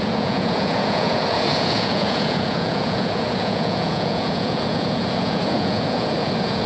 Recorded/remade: remade